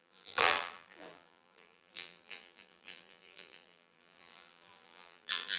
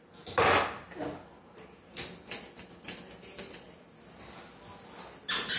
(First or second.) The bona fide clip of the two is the second